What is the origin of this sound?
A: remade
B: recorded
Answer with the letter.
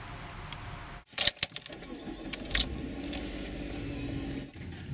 B